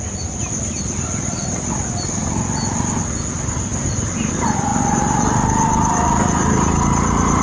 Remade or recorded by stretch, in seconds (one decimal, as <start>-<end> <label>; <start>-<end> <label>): 0.0-7.4 recorded